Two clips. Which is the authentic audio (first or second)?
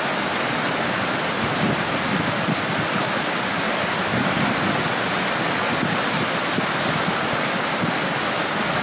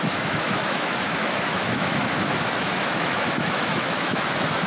first